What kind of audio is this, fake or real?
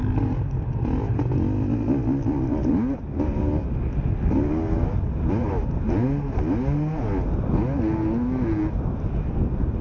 real